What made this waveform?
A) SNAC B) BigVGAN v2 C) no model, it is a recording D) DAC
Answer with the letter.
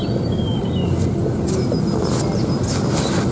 C